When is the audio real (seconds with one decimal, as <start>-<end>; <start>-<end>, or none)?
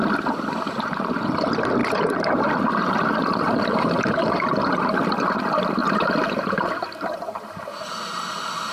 0.0-1.8; 4.8-5.8; 7.6-8.7